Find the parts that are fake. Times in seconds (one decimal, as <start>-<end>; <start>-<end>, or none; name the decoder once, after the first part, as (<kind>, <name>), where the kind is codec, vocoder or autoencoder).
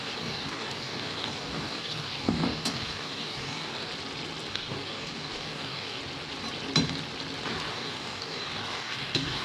0.0-3.9 (codec, DAC); 4.5-6.0; 7.7-9.4